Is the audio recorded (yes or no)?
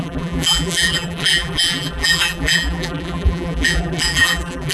no